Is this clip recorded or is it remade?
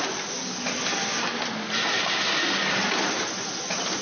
recorded